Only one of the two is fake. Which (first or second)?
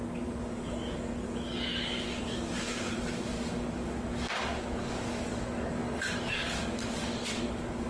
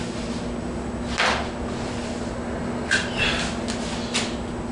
first